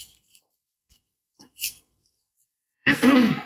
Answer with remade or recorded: remade